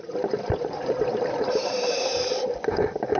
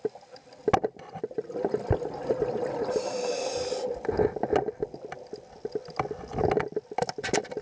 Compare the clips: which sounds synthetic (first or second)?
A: first